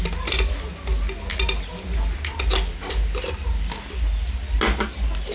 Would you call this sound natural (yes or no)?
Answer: yes